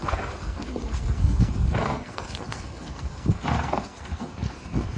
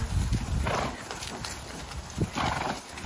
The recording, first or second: second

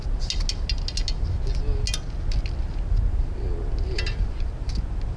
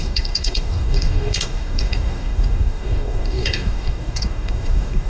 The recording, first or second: first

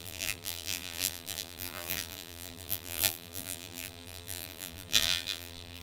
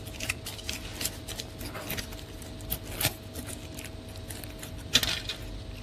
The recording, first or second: second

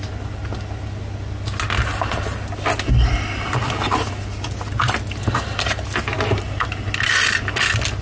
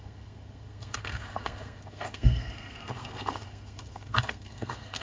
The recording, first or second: first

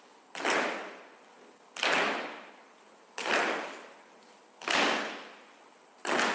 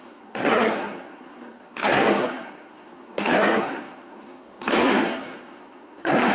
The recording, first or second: first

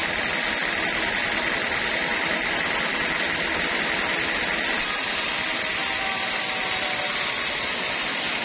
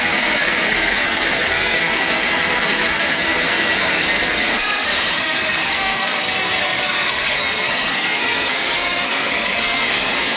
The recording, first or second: first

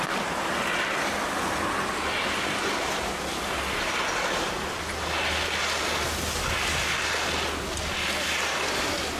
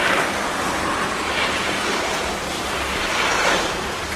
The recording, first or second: first